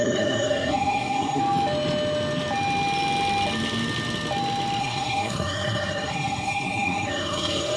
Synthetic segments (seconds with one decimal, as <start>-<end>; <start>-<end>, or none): 0.0-1.4; 4.8-7.8